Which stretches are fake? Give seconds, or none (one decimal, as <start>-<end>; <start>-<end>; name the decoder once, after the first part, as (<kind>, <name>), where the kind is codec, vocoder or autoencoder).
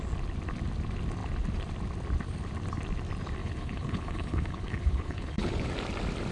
3.4-5.7 (codec, HILCodec)